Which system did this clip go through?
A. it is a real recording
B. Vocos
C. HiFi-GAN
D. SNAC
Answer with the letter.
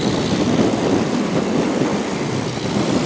A